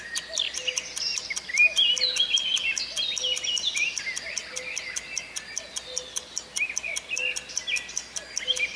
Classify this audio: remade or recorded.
recorded